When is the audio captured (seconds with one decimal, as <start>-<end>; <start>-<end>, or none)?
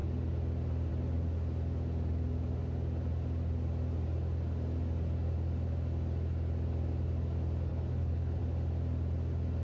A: 0.0-7.7; 8.4-9.6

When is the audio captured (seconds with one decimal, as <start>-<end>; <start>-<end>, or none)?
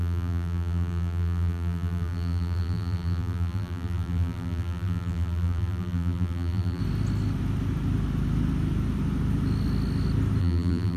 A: 6.8-10.4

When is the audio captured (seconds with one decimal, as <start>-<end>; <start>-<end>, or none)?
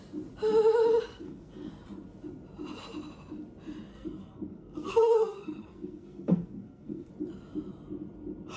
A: 0.0-1.1; 1.7-3.9; 7.1-8.6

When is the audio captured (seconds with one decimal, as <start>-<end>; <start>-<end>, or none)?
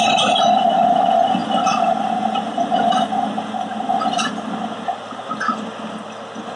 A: 0.0-1.4; 5.4-6.6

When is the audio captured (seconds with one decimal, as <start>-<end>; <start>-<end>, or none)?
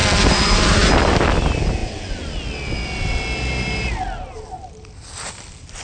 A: 0.0-5.8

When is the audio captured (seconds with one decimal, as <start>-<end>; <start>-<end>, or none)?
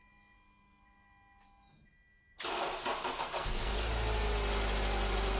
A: 0.0-3.2; 3.7-5.4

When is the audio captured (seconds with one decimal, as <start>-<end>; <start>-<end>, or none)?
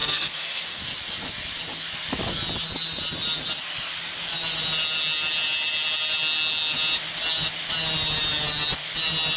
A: 0.8-9.4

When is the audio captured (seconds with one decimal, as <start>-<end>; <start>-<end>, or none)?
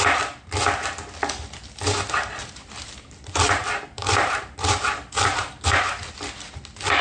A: 0.0-2.4; 5.8-7.0